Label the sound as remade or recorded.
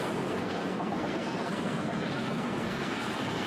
remade